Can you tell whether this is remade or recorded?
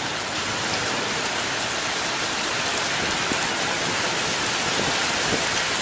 recorded